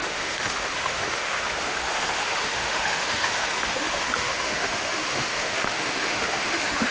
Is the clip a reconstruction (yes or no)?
yes